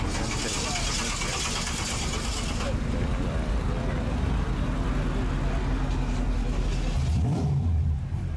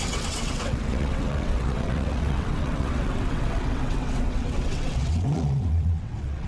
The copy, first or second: second